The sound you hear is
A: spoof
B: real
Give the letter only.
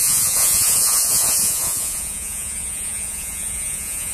A